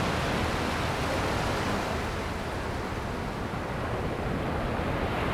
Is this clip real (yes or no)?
yes